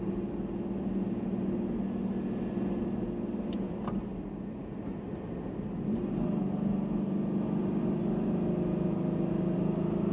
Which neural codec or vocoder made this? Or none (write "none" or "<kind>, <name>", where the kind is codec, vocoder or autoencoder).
none